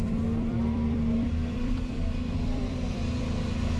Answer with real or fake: fake